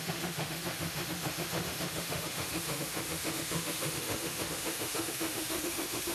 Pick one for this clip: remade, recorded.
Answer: remade